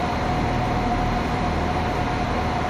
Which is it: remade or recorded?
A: remade